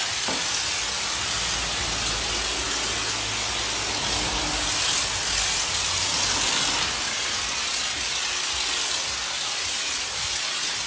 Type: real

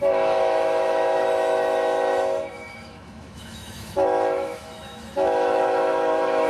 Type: fake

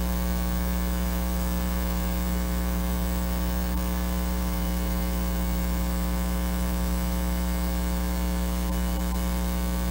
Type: fake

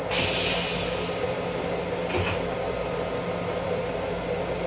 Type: real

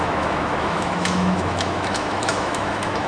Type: fake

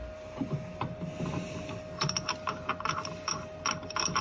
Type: real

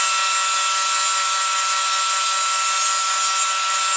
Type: real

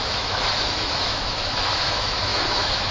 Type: fake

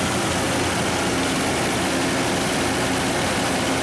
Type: real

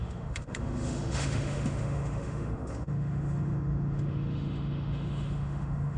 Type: fake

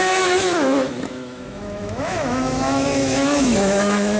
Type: fake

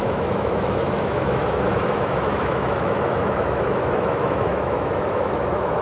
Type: fake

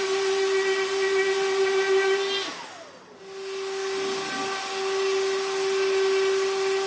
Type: real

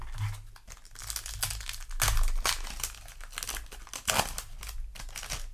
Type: real